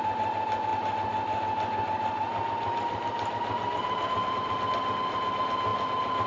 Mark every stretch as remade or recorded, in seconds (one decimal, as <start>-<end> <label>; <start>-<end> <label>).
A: 0.0-6.3 recorded